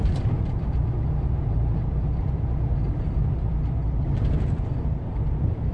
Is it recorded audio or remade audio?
remade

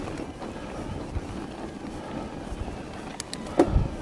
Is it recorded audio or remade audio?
recorded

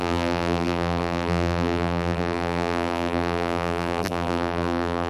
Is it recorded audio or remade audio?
remade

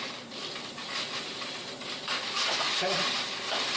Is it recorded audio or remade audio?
remade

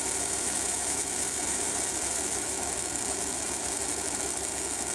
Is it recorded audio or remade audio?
remade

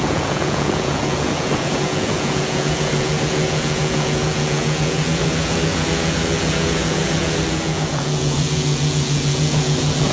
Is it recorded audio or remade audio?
remade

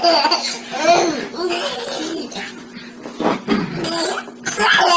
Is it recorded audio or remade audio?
recorded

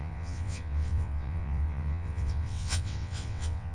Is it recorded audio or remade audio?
remade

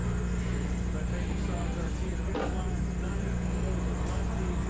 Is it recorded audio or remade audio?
recorded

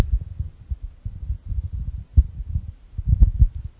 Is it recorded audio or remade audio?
recorded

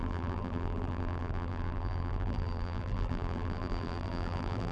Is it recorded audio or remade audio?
remade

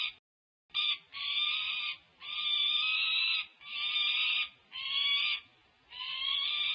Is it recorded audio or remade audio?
recorded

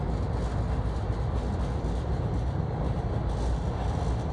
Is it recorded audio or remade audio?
recorded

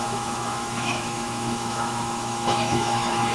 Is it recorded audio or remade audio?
remade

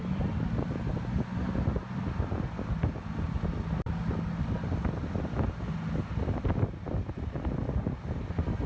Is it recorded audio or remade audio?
recorded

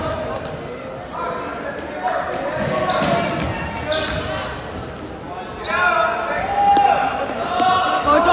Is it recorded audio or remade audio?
recorded